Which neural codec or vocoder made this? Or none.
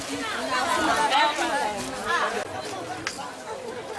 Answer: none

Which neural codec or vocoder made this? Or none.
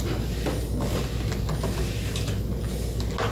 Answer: none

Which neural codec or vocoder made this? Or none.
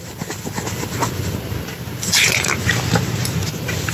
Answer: none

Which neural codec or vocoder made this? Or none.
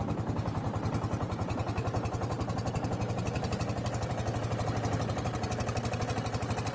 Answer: none